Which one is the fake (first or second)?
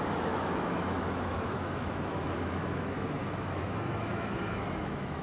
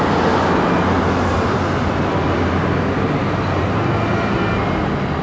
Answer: first